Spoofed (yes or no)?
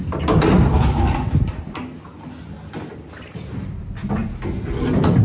no